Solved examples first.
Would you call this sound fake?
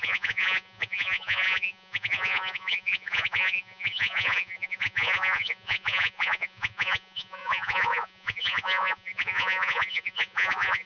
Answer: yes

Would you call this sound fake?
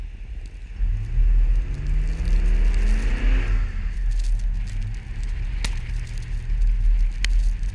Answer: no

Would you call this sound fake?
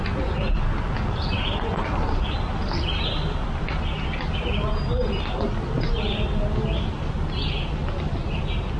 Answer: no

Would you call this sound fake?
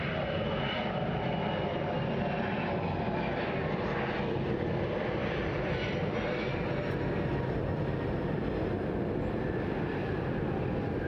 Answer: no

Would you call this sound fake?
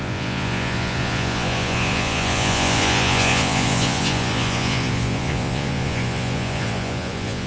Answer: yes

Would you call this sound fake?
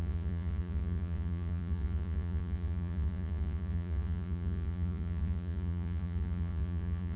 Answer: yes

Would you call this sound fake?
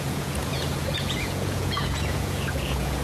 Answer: yes